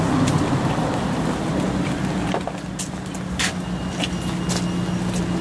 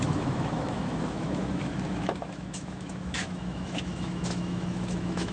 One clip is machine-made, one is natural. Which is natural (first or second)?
first